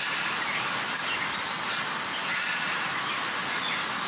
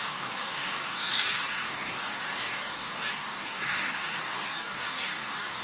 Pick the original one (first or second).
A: first